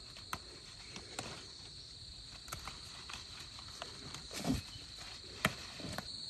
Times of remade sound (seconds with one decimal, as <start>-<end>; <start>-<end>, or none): none